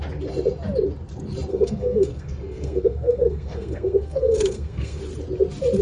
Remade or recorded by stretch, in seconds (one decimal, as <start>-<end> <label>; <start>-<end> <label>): 0.0-1.5 recorded; 1.5-5.0 remade; 5.0-5.8 recorded